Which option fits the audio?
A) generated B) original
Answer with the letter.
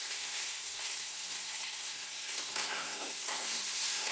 A